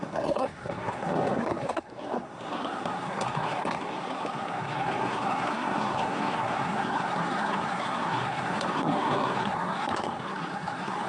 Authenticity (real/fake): fake